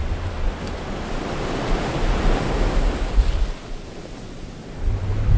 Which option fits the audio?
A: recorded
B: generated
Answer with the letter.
A